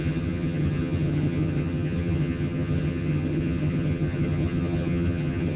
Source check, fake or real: fake